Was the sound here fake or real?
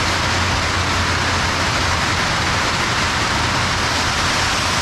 real